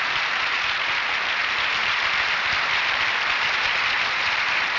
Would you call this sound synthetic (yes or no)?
no